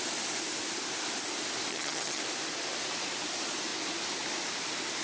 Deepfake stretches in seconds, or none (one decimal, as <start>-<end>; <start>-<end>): 1.7-2.2